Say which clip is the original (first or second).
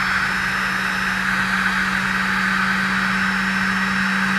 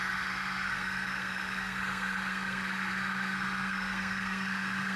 first